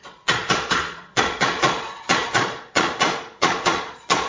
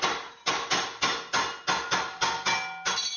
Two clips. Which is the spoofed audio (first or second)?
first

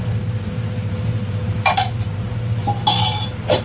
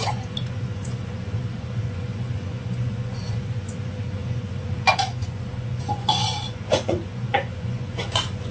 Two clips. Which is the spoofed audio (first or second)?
second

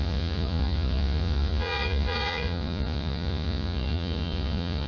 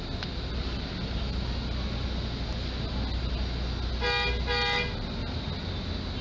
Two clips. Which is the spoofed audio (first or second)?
first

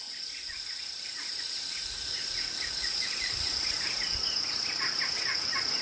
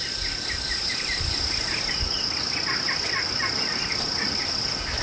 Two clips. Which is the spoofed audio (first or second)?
first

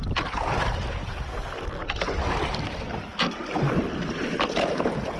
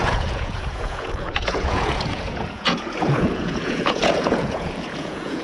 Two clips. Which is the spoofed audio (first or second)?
second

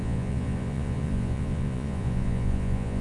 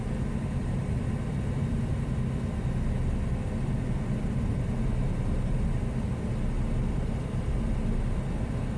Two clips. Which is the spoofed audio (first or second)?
first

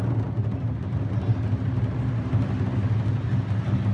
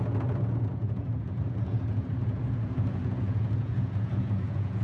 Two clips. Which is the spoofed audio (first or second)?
second